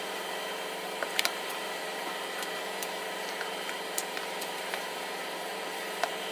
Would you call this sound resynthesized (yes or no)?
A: yes